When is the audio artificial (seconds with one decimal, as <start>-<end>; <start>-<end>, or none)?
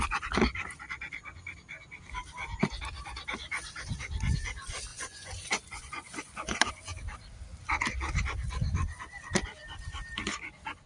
4.9-6.7